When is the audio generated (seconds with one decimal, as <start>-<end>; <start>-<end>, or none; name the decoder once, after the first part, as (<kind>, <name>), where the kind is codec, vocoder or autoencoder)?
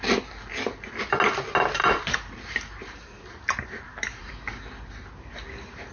1.8-4.3 (vocoder, BigVGAN v2)